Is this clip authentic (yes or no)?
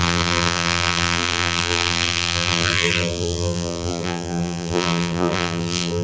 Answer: no